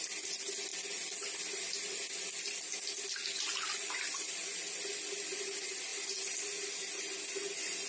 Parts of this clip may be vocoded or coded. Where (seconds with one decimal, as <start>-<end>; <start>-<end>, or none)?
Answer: none